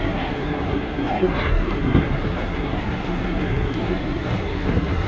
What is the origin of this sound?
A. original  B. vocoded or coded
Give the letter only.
B